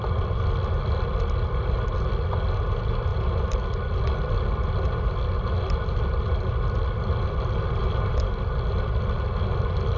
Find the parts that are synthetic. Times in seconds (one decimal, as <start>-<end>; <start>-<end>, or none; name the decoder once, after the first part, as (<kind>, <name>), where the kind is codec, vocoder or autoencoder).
none